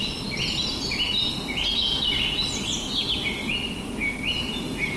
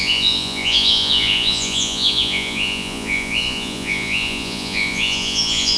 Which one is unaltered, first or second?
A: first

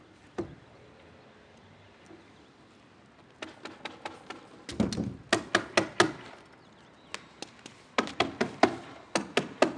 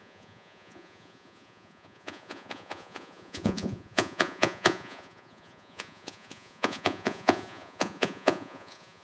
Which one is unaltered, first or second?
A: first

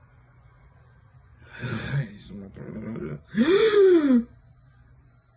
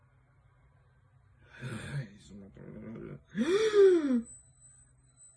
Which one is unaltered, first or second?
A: second